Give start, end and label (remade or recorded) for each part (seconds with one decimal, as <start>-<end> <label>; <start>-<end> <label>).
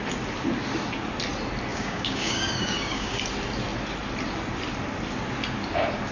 0.0-1.7 recorded; 1.7-3.2 remade; 3.2-6.1 recorded